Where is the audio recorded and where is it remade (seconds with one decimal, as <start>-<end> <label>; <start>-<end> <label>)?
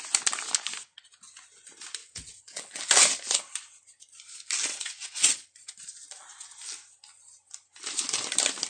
0.0-2.0 recorded; 2.0-2.8 remade; 2.8-4.7 recorded; 4.7-5.7 remade; 5.7-8.7 recorded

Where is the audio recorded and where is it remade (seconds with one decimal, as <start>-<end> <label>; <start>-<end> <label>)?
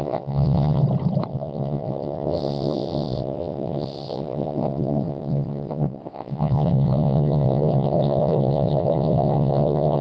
0.0-0.8 remade; 0.8-1.3 recorded; 1.3-10.0 remade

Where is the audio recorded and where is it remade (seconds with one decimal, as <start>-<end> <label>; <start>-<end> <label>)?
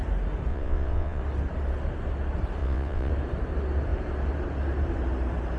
0.0-0.5 recorded; 0.5-1.2 remade; 1.2-2.6 recorded; 2.6-3.1 remade; 3.1-5.6 recorded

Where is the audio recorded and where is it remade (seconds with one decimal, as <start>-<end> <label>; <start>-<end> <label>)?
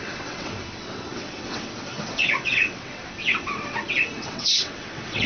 0.0-5.3 remade